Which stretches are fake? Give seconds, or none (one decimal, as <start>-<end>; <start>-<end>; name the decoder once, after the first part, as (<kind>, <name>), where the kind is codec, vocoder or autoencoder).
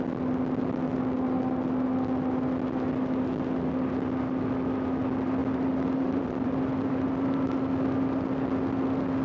5.4-7.5 (vocoder, BigVGAN v2)